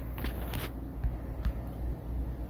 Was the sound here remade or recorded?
recorded